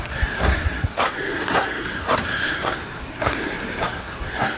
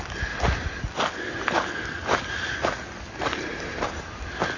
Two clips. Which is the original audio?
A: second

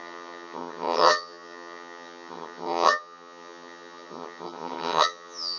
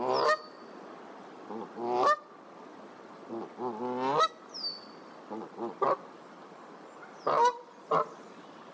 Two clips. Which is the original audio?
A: second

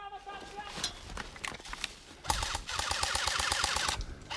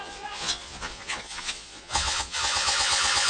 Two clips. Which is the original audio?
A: first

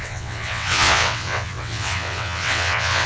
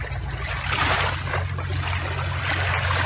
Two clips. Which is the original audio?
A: second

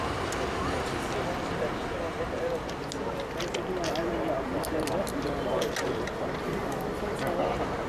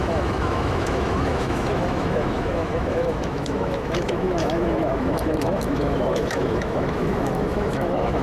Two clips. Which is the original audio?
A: first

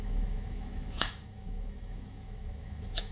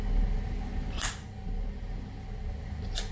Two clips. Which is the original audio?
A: second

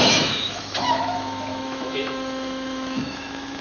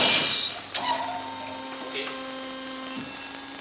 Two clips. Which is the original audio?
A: second